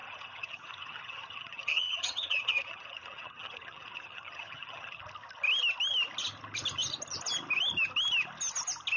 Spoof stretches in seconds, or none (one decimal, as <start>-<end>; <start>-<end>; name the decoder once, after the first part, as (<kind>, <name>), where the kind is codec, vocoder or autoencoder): 0.0-5.0 (vocoder, HiFi-GAN)